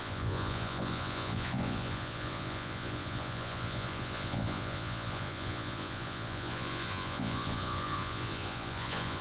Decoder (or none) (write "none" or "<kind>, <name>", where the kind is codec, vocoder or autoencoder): vocoder, Vocos